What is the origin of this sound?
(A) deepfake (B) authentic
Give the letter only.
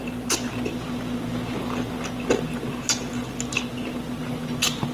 B